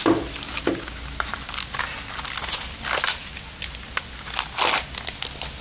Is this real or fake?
real